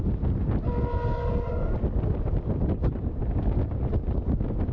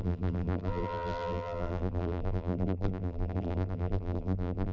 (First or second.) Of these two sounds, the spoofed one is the second